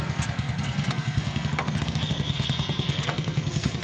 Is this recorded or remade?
remade